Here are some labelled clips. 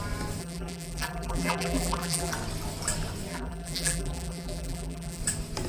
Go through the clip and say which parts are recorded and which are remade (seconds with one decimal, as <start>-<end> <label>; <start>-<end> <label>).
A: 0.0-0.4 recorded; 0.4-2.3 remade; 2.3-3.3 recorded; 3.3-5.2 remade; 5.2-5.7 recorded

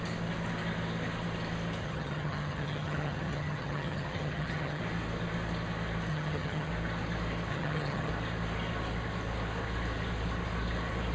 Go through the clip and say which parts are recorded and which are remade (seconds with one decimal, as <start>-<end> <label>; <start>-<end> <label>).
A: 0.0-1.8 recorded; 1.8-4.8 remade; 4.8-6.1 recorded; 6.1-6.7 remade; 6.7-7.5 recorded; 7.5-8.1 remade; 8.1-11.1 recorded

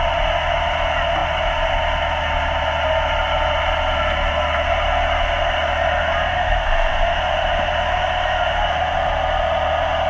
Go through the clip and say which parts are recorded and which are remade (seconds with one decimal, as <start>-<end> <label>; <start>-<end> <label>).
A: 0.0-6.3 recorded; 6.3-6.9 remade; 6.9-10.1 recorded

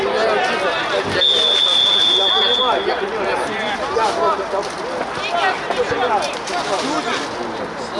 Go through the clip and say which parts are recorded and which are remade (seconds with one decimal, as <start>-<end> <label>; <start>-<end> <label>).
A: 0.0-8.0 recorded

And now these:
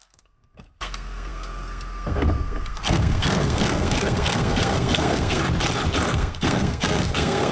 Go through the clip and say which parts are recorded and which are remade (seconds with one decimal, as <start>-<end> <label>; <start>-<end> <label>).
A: 0.0-5.4 remade; 5.4-6.1 recorded; 6.1-7.5 remade

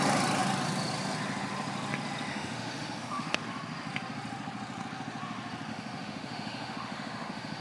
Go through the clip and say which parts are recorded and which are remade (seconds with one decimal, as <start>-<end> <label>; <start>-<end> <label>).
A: 0.0-2.3 recorded; 2.3-3.4 remade; 3.4-5.7 recorded; 5.7-7.6 remade

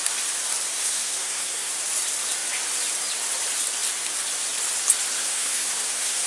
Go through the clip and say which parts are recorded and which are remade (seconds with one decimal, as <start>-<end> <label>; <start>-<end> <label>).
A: 0.0-0.7 recorded; 0.7-1.7 remade; 1.7-5.2 recorded; 5.2-6.3 remade